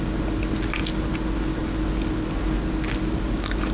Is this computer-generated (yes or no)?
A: no